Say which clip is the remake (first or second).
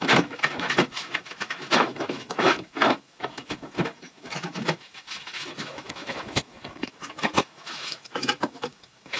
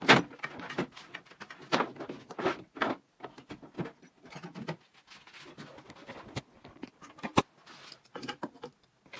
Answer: first